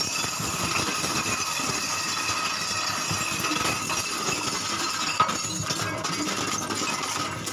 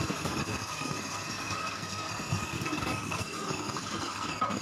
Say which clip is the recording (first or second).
first